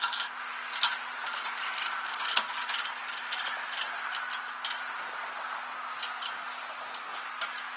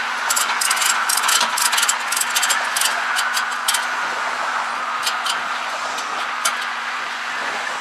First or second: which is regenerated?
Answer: second